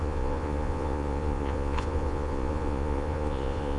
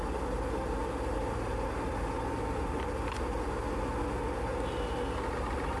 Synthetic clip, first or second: first